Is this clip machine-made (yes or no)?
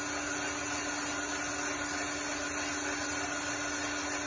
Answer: no